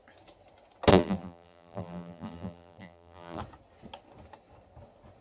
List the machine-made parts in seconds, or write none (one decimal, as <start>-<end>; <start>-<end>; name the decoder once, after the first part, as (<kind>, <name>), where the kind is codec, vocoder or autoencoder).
0.9-3.4 (vocoder, BigVGAN v2)